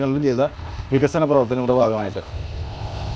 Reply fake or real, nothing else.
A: fake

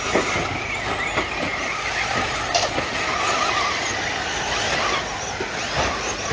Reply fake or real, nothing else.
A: real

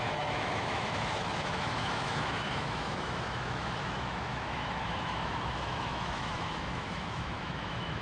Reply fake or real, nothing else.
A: fake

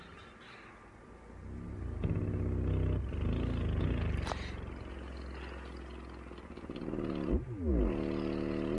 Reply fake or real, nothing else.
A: real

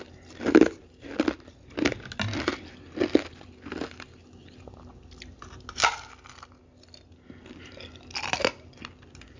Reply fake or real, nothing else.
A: real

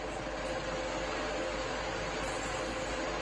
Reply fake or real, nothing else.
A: real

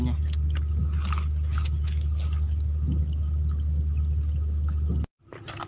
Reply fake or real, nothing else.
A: real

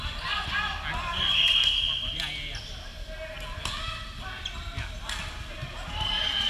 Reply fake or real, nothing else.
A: real